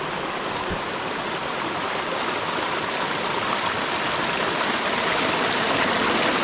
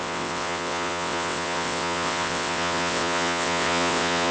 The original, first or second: first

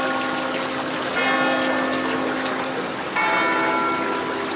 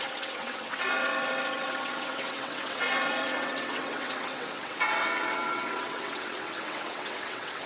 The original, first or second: first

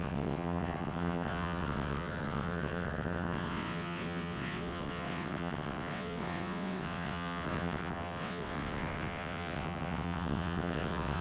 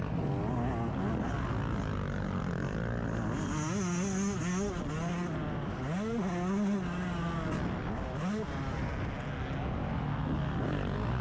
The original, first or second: second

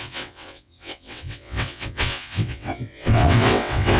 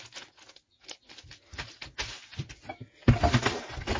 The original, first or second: second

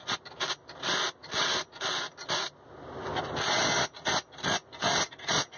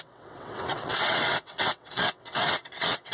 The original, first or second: first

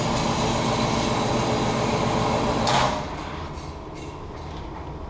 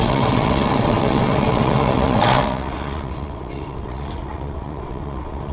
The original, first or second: first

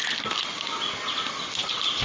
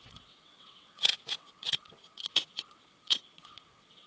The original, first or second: first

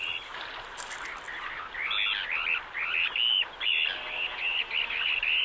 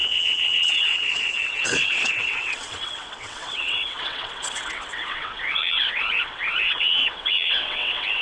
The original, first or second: first